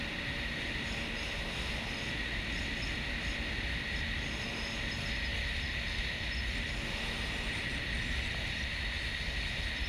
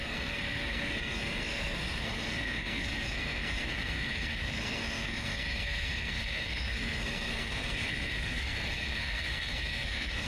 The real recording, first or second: first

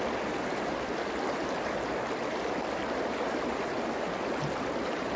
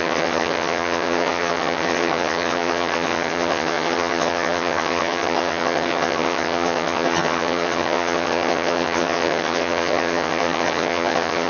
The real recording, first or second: first